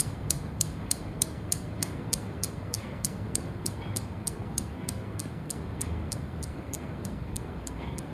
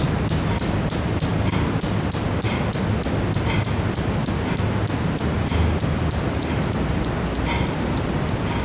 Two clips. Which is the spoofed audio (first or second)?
first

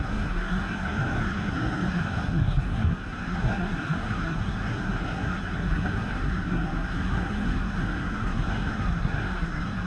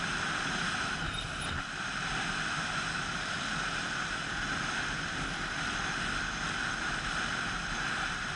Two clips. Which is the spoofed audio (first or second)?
first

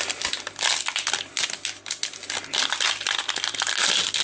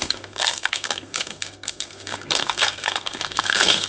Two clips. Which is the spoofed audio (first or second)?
second